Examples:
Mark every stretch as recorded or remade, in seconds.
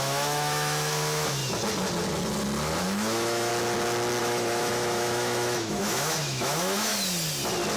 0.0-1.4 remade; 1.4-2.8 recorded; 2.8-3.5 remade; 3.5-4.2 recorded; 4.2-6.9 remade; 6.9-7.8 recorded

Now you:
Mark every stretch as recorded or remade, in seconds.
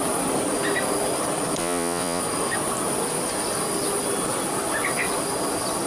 0.0-1.6 recorded; 1.6-2.2 remade; 2.2-5.9 recorded